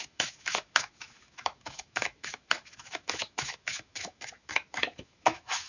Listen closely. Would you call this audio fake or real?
fake